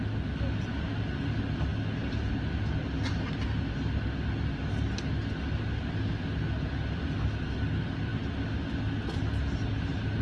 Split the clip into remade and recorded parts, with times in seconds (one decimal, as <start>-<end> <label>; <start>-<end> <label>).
0.0-10.2 recorded